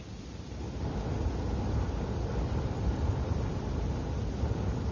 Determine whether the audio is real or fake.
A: real